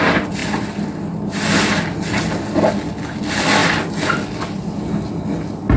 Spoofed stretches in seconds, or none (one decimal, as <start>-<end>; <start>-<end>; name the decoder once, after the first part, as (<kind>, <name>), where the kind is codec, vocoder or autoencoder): none